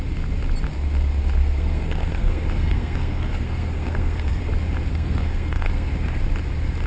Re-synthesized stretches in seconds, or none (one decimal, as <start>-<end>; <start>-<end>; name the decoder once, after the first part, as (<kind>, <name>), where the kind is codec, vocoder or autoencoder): 1.4-4.4 (codec, SNAC); 4.9-5.9